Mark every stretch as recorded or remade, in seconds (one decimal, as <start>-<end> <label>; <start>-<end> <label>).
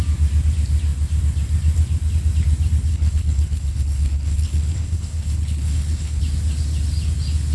0.0-2.9 recorded; 2.9-6.2 remade; 6.2-7.5 recorded